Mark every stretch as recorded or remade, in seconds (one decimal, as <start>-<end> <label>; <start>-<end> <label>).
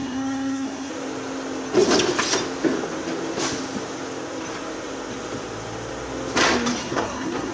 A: 0.0-0.9 remade; 0.9-6.8 recorded; 6.8-7.5 remade